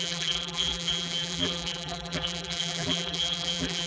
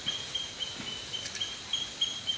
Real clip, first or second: second